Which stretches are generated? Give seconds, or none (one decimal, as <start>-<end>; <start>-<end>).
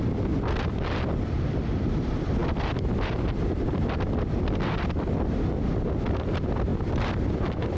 0.0-7.8